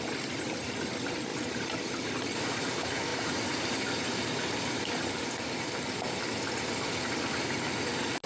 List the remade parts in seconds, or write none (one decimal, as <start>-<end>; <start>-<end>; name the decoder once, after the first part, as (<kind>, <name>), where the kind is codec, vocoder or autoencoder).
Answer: 1.3-2.1 (vocoder, BigVGAN v2); 3.1-6.2